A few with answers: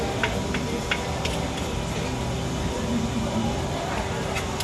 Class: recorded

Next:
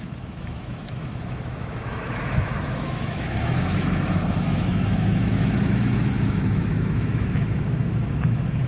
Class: remade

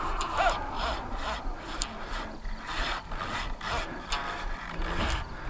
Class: recorded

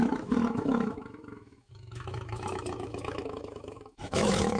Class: remade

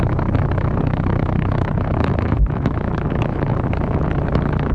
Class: remade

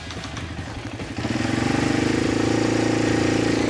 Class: recorded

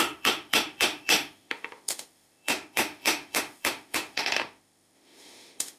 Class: remade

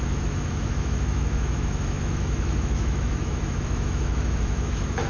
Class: remade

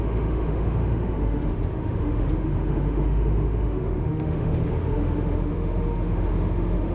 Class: remade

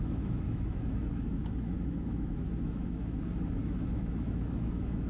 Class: remade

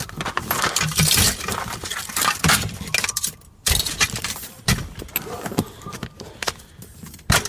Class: recorded